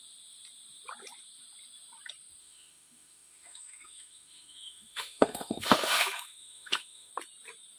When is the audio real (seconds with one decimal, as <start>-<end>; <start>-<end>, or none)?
0.0-2.4; 7.1-7.8